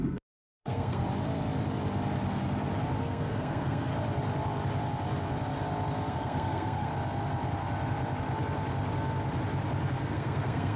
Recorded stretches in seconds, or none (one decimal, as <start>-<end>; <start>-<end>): 1.0-3.0; 3.9-6.1; 6.9-10.1